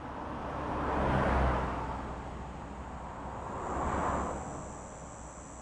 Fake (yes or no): no